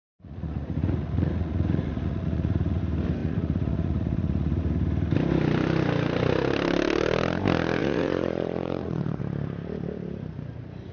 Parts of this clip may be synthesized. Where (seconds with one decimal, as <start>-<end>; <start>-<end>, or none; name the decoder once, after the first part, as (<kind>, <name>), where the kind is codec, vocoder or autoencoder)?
0.0-2.8 (vocoder, Vocos); 3.2-4.6; 7.8-9.2